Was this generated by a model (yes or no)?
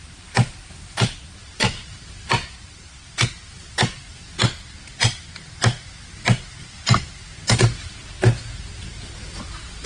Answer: no